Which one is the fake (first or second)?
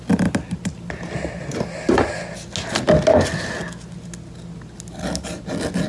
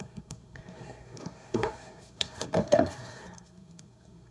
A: second